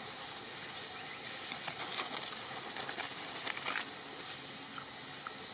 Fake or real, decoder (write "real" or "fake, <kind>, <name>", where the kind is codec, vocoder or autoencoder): real